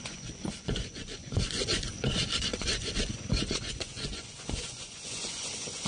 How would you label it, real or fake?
fake